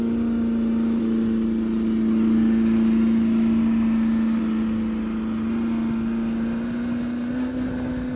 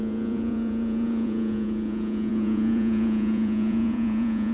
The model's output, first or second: second